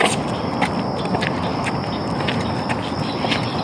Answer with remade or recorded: recorded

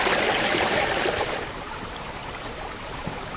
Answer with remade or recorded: recorded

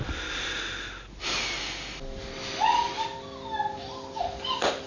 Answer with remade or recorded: recorded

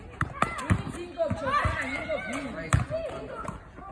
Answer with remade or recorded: recorded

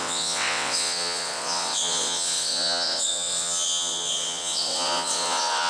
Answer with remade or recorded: remade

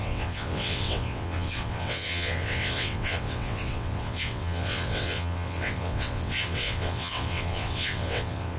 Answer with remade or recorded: remade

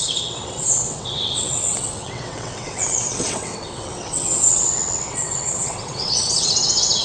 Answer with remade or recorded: remade